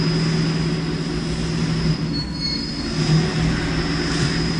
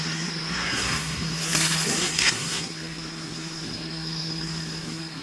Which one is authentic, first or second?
first